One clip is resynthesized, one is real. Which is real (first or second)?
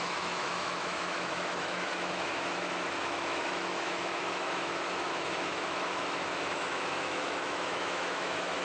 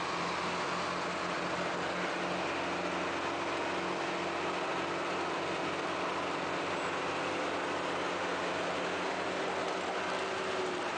second